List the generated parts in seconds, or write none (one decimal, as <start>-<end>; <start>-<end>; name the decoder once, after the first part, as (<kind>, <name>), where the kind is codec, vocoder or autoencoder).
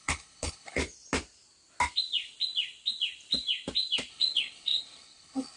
0.0-0.8 (codec, HILCodec); 4.1-5.6